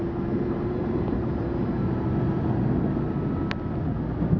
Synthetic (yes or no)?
no